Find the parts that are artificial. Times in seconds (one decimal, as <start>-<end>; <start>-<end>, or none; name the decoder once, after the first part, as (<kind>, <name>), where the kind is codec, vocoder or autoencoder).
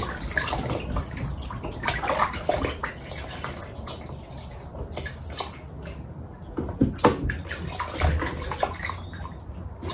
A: 0.0-2.6 (vocoder, BigVGAN v2)